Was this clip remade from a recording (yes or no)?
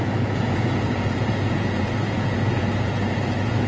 yes